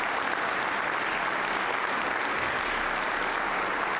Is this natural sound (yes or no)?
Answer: yes